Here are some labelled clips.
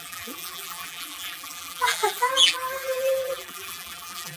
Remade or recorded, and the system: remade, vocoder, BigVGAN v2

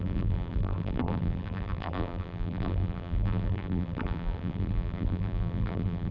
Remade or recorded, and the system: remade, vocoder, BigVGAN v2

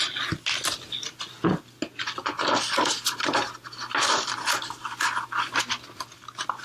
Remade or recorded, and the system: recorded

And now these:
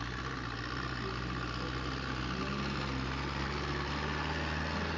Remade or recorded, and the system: recorded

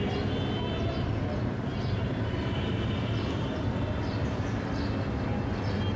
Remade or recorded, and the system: recorded